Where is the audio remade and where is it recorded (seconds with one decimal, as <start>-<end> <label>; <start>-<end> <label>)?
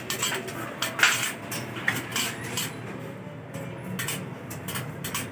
0.0-5.3 recorded